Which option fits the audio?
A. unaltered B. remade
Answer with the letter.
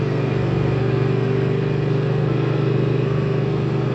B